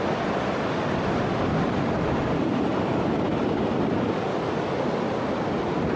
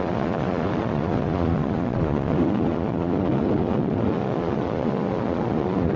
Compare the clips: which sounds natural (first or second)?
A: first